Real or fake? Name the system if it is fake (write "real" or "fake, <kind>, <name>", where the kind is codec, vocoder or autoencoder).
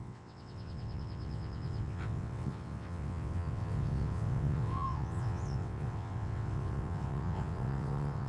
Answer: fake, vocoder, WaveNeXt